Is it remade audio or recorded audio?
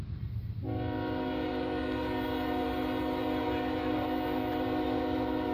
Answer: recorded